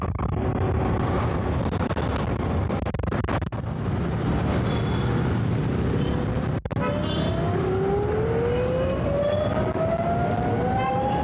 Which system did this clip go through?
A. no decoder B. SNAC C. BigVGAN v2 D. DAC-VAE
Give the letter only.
A